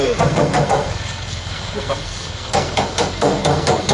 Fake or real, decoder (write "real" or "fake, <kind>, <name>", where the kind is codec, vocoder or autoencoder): fake, codec, SNAC